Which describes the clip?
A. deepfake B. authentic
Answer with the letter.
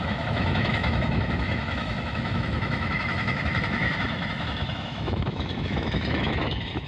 A